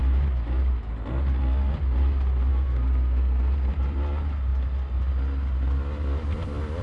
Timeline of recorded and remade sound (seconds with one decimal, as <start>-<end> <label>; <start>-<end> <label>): 0.0-2.5 recorded; 2.5-3.7 remade; 3.7-6.8 recorded